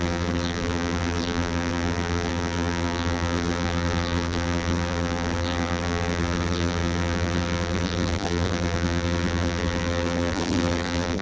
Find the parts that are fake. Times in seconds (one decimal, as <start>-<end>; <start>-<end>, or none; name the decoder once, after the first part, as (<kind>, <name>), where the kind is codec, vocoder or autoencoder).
0.0-11.2 (vocoder, BigVGAN v2)